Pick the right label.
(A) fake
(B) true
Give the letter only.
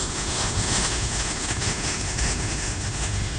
A